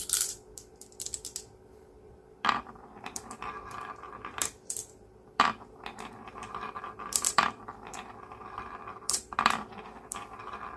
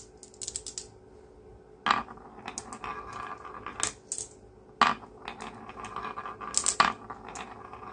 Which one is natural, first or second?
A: second